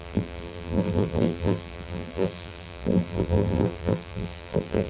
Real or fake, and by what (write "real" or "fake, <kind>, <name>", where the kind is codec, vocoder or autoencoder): fake, vocoder, BigVGAN v2